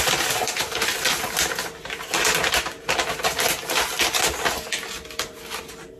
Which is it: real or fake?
real